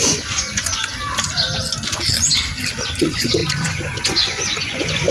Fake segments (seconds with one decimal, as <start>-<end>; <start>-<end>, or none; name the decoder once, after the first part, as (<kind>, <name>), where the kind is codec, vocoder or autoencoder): 0.0-0.9 (vocoder, Vocos); 3.0-5.1